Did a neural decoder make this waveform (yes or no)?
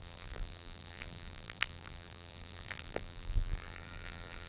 yes